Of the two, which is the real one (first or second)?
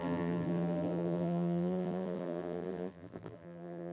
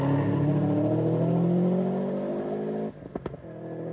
second